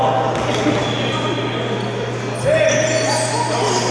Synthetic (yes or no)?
no